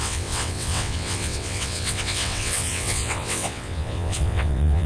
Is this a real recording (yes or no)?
no